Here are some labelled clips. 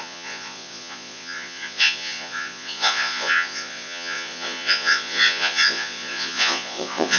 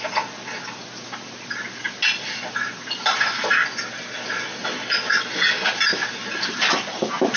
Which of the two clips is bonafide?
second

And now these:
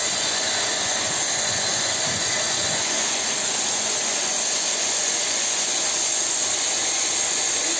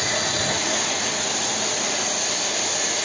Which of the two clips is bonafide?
second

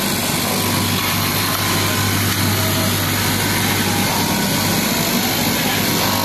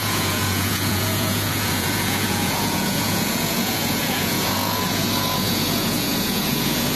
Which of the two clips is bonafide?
first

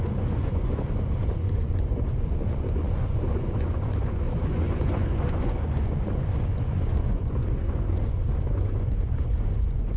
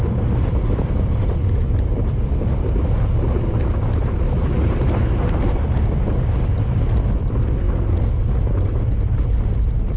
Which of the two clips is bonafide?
second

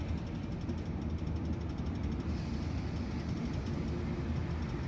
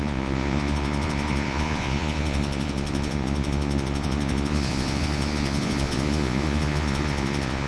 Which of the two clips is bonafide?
first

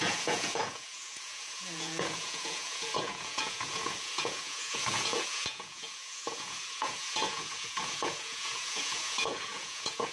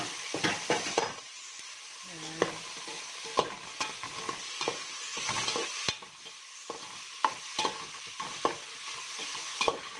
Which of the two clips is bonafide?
second